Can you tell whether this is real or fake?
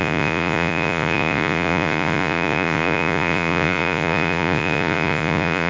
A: fake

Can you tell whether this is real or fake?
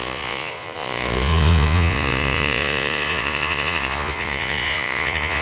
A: fake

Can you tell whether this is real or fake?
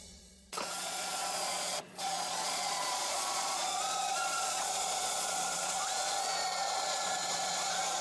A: fake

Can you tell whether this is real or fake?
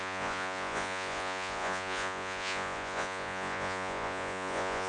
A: fake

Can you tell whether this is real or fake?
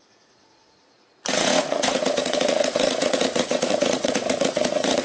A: fake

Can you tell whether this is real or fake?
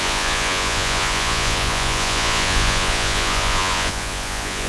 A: fake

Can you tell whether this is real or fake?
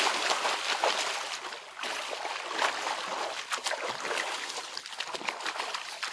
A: real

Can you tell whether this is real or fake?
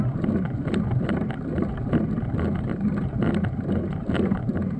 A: real